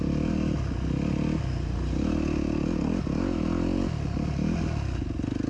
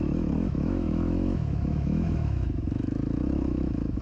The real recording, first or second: first